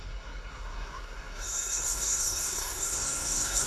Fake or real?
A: fake